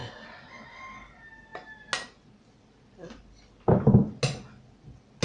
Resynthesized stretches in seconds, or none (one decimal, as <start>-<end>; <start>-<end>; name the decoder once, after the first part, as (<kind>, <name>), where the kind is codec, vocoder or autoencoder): none